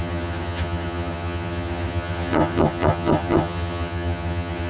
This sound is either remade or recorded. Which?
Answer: remade